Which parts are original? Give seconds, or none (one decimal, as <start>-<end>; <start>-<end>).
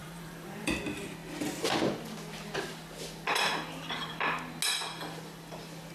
0.7-5.9